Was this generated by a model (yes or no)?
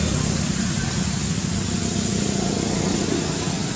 no